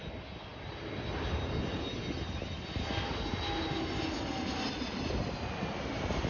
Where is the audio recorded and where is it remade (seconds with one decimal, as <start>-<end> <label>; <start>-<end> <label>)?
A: 0.0-6.3 recorded